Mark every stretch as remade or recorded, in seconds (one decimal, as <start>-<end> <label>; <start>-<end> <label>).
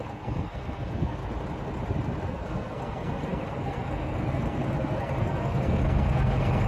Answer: 0.0-1.2 remade; 1.2-2.3 recorded; 2.3-6.7 remade